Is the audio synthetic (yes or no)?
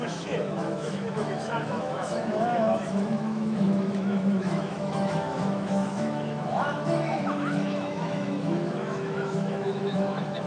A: yes